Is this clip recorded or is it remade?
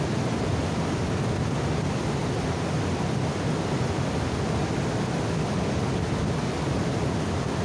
recorded